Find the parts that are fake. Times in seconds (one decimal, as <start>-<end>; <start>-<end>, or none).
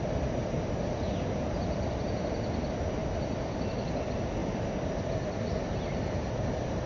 none